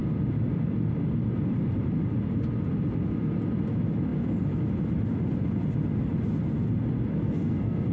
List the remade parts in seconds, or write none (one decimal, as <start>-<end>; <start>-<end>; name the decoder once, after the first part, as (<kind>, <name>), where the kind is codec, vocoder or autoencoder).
7.1-7.9 (codec, SNAC)